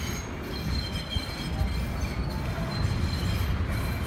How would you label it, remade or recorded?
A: recorded